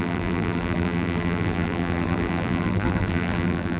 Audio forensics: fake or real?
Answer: fake